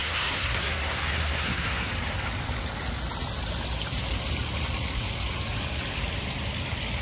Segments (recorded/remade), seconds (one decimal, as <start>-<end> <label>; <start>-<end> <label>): 0.0-1.9 remade; 1.9-7.0 recorded